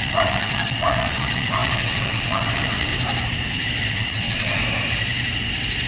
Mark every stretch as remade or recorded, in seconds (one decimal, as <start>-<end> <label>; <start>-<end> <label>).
0.0-2.9 remade; 2.9-3.9 recorded; 3.9-4.6 remade; 4.6-5.9 recorded